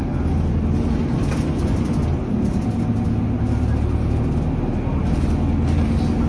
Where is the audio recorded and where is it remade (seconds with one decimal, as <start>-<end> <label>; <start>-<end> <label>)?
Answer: 0.0-6.3 recorded

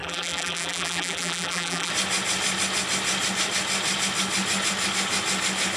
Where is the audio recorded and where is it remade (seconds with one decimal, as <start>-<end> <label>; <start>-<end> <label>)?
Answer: 0.0-1.9 remade; 1.9-5.8 recorded

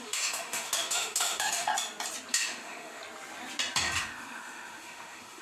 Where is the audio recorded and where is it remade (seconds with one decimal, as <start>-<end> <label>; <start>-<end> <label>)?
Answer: 0.0-1.7 remade; 1.7-2.3 recorded; 2.3-3.0 remade; 3.0-4.0 recorded; 4.0-5.4 remade

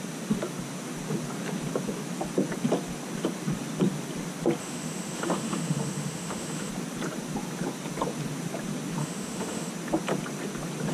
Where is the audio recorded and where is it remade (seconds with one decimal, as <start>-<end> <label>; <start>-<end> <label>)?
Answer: 0.0-4.6 recorded; 4.6-6.7 remade; 6.7-9.0 recorded; 9.0-9.7 remade; 9.7-10.9 recorded

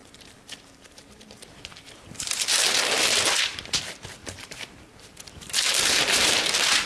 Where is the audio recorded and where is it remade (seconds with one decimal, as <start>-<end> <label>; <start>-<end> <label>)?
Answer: 0.0-3.8 remade; 3.8-4.2 recorded; 4.2-6.5 remade; 6.5-6.9 recorded

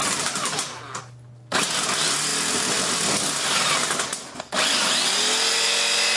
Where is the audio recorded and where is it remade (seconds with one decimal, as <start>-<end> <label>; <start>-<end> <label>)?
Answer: 0.0-6.2 recorded

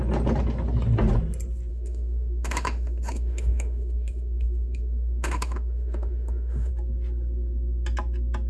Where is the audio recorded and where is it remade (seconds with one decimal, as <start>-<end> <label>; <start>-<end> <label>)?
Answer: 0.0-1.7 recorded; 1.7-6.7 remade; 6.7-8.5 recorded